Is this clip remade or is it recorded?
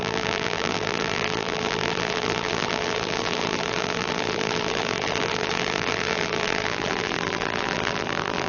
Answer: remade